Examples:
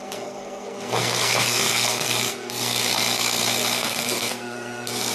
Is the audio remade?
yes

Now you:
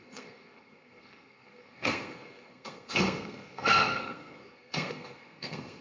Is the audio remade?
yes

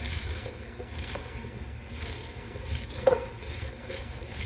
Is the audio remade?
yes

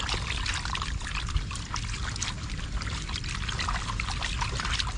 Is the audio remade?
no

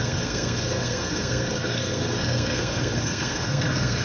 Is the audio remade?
yes